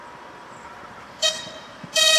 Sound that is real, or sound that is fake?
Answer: fake